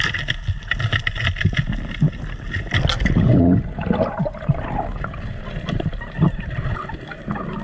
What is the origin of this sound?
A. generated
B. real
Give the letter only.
B